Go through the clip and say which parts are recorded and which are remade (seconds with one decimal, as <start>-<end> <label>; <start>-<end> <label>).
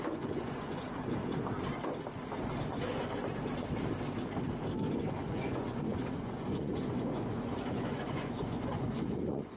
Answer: 0.0-1.2 remade; 1.2-5.3 recorded; 5.3-9.6 remade